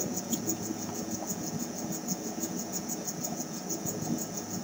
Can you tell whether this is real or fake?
fake